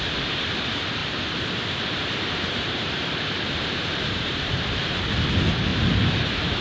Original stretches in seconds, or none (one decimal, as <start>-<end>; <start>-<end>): 0.0-1.0; 5.0-5.7